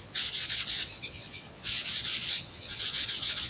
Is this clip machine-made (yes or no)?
yes